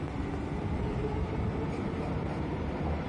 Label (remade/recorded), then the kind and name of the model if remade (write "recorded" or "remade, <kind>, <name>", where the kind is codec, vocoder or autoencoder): recorded